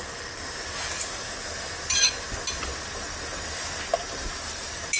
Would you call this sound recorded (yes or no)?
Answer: yes